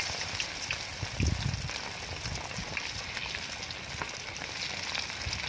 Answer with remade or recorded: recorded